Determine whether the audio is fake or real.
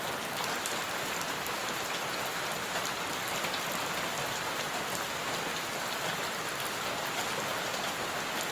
real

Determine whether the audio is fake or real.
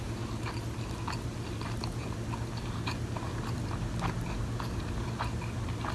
real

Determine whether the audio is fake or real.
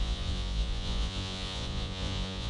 fake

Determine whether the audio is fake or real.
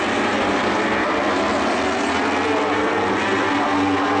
real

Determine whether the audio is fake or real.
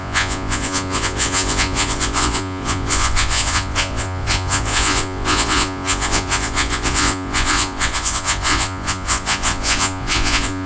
fake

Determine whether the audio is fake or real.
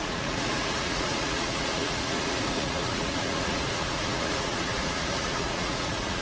fake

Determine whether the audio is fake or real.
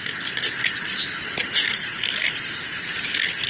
real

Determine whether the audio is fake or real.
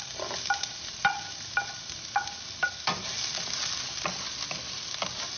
real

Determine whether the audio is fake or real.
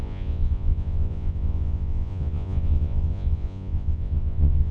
fake